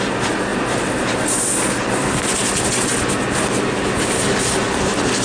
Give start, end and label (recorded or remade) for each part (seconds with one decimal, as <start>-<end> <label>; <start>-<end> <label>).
0.0-5.2 recorded